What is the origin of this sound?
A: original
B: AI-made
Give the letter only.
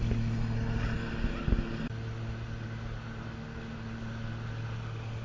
A